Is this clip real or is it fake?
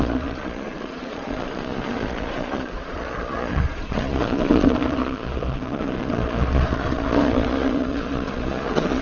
fake